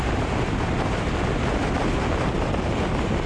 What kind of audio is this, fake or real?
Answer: real